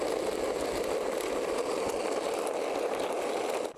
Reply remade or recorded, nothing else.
recorded